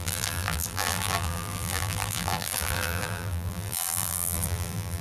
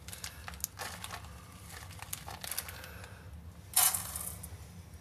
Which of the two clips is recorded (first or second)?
second